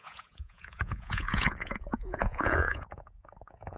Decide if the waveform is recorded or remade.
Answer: remade